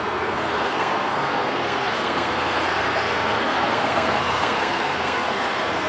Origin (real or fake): fake